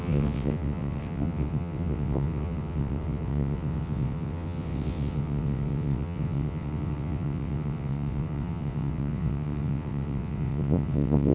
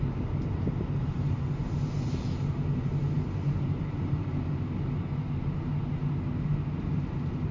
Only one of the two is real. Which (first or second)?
second